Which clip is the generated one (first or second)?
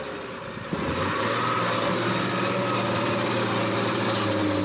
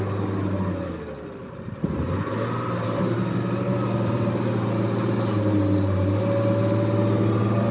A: first